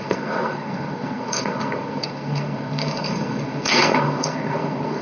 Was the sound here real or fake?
fake